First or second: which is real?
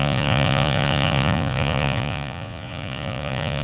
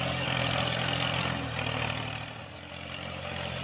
second